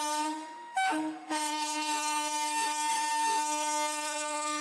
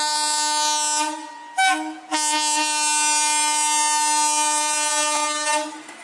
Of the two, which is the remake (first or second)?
first